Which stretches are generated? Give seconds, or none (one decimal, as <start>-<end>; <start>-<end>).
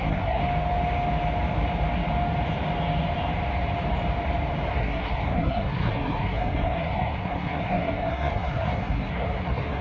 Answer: 0.0-0.4; 4.7-9.8